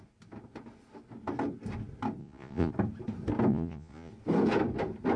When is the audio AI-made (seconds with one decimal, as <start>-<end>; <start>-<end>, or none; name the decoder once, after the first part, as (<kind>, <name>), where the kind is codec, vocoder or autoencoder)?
2.2-2.7 (vocoder, Vocos); 3.5-4.1